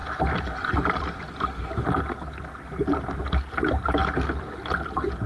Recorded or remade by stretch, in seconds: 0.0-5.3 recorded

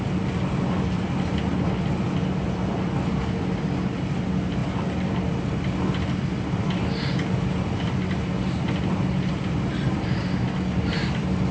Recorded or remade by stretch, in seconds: 0.0-11.5 recorded

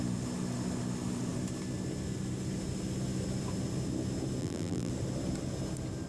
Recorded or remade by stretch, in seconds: 0.0-4.4 recorded; 4.4-4.9 remade; 4.9-6.1 recorded

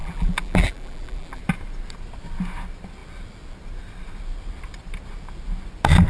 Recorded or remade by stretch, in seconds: 0.0-1.4 remade; 1.4-6.1 recorded

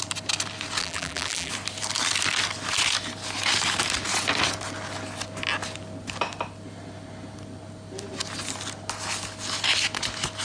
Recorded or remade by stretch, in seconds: 0.0-0.8 recorded; 0.8-1.5 remade; 1.5-10.4 recorded

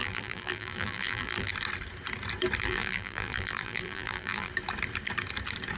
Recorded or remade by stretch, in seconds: 0.0-1.5 remade; 1.5-2.6 recorded; 2.6-4.5 remade; 4.5-5.8 recorded